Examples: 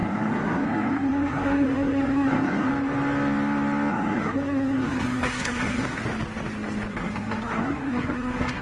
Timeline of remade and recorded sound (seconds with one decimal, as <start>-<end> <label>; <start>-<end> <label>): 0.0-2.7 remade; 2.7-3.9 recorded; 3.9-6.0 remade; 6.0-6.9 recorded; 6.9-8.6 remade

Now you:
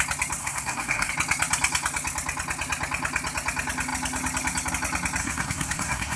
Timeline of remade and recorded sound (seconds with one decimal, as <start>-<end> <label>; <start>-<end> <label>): 0.0-0.4 recorded; 0.4-1.1 remade; 1.1-5.2 recorded; 5.2-6.2 remade

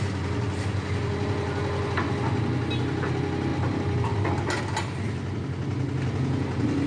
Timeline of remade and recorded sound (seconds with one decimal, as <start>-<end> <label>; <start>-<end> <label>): 0.0-6.9 recorded

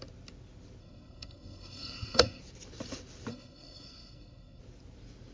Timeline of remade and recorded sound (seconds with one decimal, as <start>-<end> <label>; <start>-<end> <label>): 0.0-0.8 recorded; 0.8-2.4 remade; 2.4-3.3 recorded; 3.3-4.6 remade; 4.6-5.3 recorded

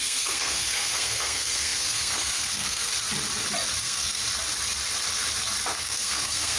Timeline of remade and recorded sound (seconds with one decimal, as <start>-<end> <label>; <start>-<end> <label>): 0.0-2.9 remade; 2.9-3.8 recorded; 3.8-4.2 remade; 4.2-5.8 recorded; 5.8-6.6 remade